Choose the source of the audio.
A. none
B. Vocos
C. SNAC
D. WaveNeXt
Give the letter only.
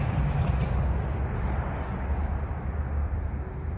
A